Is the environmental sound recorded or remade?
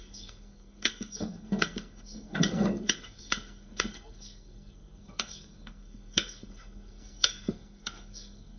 remade